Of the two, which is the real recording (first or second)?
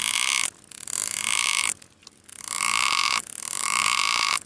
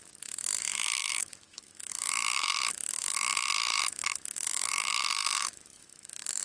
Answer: first